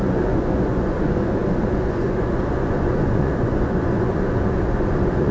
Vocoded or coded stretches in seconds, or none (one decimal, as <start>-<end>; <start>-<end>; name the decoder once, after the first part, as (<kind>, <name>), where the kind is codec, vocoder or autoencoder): 0.0-5.3 (vocoder, Vocos)